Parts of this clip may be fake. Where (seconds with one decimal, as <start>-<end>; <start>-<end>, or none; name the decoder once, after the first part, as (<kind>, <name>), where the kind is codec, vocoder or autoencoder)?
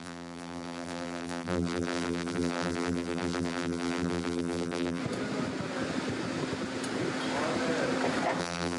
0.0-5.0 (vocoder, BigVGAN v2); 8.4-8.8